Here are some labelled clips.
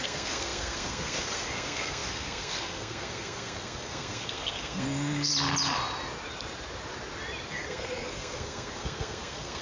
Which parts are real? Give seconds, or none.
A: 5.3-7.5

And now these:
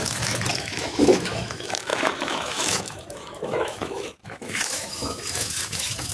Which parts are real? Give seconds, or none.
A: none

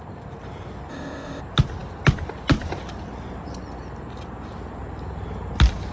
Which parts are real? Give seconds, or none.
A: 0.0-0.9; 1.4-5.9

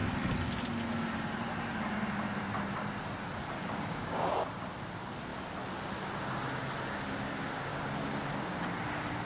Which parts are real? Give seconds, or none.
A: 0.0-3.4; 4.5-7.7; 8.6-9.3

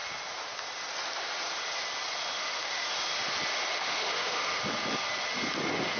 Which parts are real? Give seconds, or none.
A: 0.0-2.3; 2.9-3.8; 4.6-6.0